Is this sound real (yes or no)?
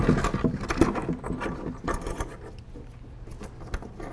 yes